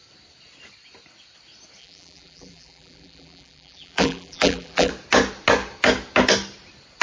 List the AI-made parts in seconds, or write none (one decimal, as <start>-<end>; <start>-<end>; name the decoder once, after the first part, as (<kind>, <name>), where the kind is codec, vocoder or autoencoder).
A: 1.8-4.9 (vocoder, BigVGAN v2)